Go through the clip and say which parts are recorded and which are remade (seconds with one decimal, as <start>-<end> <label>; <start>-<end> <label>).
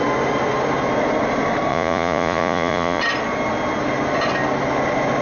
0.0-1.7 recorded; 1.7-3.0 remade; 3.0-5.2 recorded